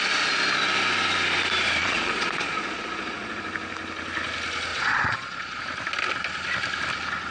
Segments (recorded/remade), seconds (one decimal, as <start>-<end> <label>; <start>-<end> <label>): 0.0-1.8 recorded; 1.8-3.4 remade; 3.4-4.7 recorded; 4.7-5.6 remade; 5.6-7.3 recorded